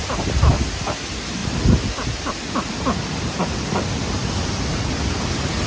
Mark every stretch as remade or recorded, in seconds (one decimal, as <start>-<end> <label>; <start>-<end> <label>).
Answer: 0.0-5.7 recorded